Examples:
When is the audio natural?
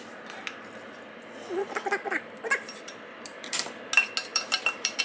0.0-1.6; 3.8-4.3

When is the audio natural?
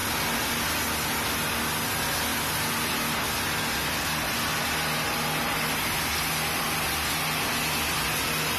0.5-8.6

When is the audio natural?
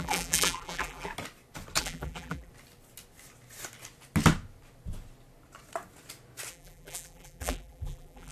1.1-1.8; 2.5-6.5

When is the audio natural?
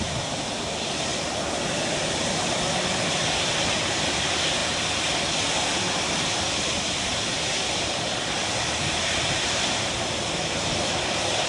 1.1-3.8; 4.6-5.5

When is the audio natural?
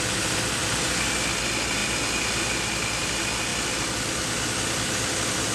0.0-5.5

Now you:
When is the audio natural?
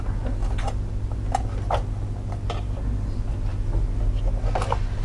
0.0-5.0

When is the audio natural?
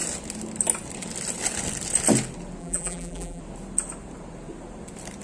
0.0-2.6; 3.4-5.2